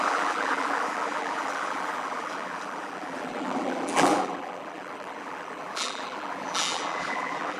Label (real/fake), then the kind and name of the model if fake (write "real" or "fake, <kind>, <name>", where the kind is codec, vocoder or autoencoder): fake, vocoder, BigVGAN v2